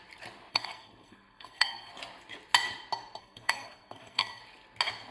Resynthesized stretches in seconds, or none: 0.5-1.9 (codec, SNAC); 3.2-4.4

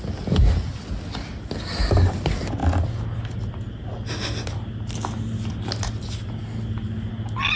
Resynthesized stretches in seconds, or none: none